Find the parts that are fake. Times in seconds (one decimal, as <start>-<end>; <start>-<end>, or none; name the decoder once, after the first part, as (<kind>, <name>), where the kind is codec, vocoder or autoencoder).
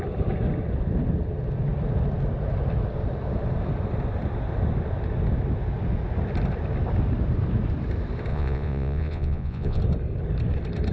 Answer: 8.3-9.8 (vocoder, Vocos)